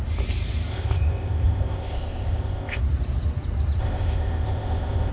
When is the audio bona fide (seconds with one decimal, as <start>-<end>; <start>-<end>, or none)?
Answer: 0.0-0.7; 2.8-3.8